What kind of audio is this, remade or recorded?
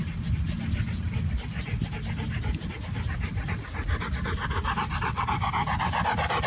recorded